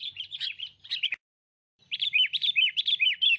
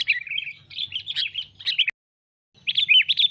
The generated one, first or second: first